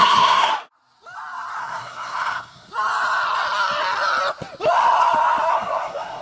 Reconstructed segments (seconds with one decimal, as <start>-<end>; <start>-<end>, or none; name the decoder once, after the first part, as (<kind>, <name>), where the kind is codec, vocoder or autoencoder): 0.0-0.5 (codec, SNAC); 1.6-2.7; 5.5-6.2